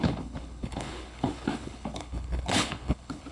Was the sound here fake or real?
fake